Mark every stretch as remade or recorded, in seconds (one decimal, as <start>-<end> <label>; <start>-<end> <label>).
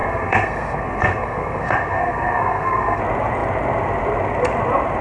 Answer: 0.0-3.0 remade; 3.0-5.0 recorded